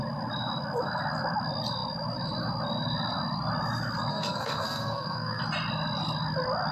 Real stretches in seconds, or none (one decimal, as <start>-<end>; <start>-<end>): 0.0-4.1; 5.4-6.7